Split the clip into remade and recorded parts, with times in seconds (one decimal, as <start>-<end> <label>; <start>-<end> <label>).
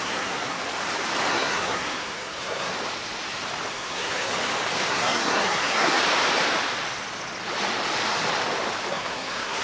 0.0-0.6 remade; 0.6-1.3 recorded; 1.3-2.7 remade; 2.7-3.7 recorded; 3.7-4.3 remade; 4.3-4.9 recorded; 4.9-6.0 remade; 6.0-8.9 recorded; 8.9-9.6 remade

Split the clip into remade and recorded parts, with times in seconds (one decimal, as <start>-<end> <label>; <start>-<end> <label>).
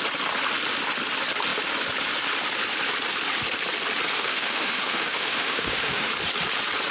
0.0-4.1 recorded; 4.1-6.1 remade; 6.1-6.9 recorded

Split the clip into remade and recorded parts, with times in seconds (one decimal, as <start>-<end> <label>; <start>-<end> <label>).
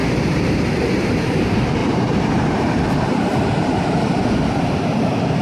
0.0-1.4 remade; 1.4-1.8 recorded; 1.8-4.2 remade; 4.2-5.4 recorded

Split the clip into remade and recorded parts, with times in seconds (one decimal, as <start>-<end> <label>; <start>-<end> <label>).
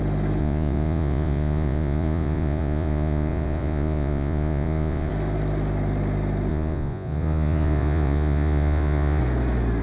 0.0-0.4 recorded; 0.4-5.1 remade; 5.1-6.5 recorded; 6.5-9.2 remade; 9.2-9.8 recorded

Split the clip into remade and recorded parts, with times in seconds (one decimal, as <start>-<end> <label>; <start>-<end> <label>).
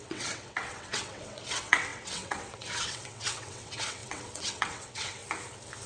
0.0-5.2 remade; 5.2-5.9 recorded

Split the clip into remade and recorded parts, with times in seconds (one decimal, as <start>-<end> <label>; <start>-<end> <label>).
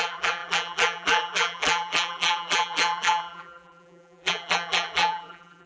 0.0-5.7 remade